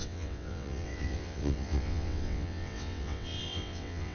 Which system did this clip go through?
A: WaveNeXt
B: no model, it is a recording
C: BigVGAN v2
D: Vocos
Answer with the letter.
A